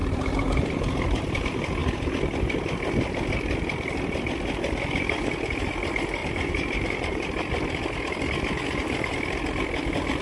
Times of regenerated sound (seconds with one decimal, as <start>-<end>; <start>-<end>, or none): 0.0-1.4; 6.2-7.5